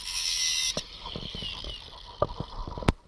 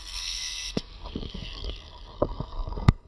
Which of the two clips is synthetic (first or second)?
second